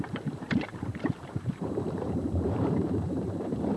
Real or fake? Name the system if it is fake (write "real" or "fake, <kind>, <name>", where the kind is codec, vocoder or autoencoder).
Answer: fake, vocoder, BigVGAN v2